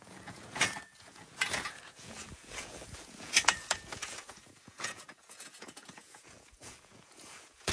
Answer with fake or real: fake